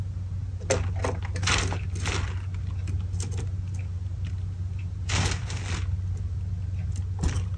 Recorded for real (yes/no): yes